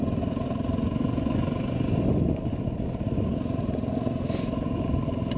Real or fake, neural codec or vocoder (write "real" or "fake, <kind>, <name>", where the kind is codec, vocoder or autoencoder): real